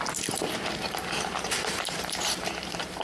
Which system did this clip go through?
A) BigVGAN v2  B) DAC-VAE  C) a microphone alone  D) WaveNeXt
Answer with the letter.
A